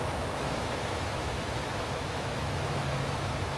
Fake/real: fake